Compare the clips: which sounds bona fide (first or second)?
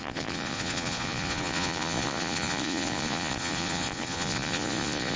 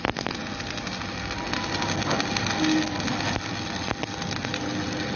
second